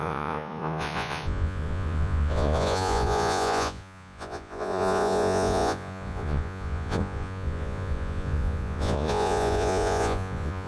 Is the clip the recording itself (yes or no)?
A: no